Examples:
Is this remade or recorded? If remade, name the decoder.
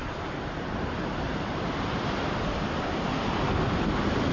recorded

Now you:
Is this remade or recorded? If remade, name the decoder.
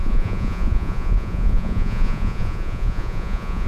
remade, vocoder, Vocos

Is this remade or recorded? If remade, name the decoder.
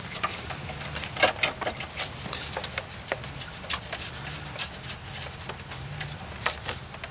recorded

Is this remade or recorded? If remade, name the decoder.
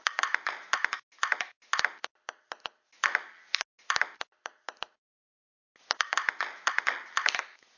recorded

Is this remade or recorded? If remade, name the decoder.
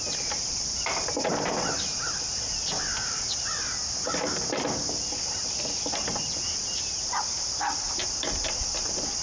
recorded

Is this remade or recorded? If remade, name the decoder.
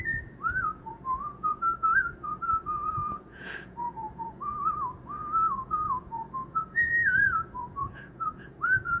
remade, vocoder, Vocos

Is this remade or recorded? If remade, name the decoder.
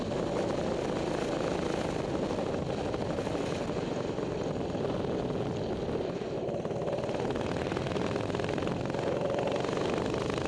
recorded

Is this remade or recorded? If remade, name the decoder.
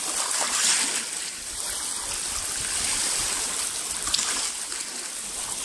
recorded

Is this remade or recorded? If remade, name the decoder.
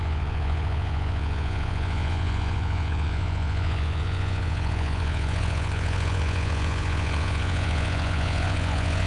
remade, vocoder, Vocos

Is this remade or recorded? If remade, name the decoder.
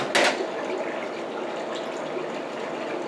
recorded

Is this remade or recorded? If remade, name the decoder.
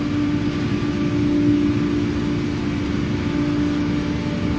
recorded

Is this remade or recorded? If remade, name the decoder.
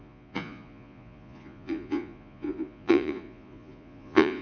remade, vocoder, Vocos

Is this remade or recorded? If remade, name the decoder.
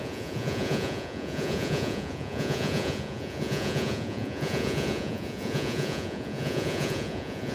remade, vocoder, Vocos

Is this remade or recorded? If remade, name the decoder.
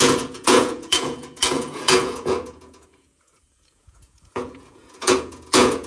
remade, vocoder, Vocos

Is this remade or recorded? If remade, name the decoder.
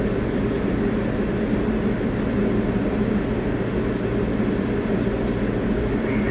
recorded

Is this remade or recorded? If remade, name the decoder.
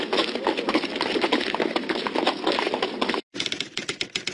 recorded